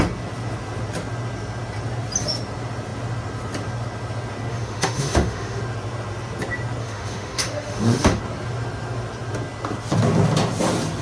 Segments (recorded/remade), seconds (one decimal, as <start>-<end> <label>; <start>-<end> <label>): 0.0-4.5 recorded; 4.5-5.6 remade; 5.6-6.8 recorded; 6.8-8.2 remade; 8.2-11.0 recorded

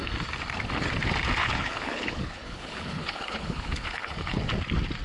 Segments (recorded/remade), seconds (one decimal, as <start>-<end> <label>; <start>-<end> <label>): 0.0-1.4 recorded; 1.4-4.4 remade; 4.4-5.0 recorded

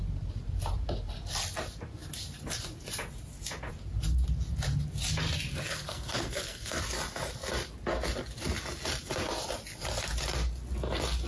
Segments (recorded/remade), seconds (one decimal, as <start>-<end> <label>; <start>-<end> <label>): 0.0-5.5 recorded; 5.5-6.8 remade; 6.8-11.3 recorded

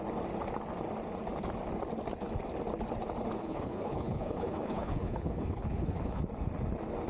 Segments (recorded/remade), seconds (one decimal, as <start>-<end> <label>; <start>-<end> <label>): 0.0-3.4 recorded; 3.4-6.2 remade; 6.2-7.1 recorded